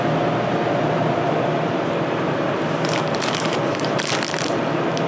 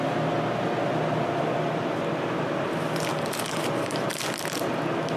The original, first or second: second